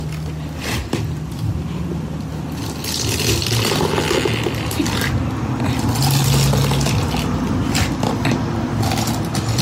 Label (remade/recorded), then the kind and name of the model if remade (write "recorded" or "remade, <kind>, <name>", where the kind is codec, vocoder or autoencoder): recorded